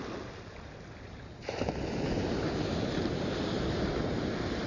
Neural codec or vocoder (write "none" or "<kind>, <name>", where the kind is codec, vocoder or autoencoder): none